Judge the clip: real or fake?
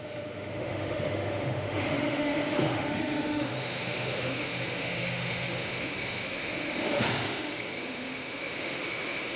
fake